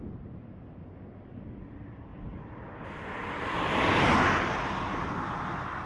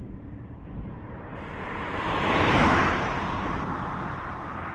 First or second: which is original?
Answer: first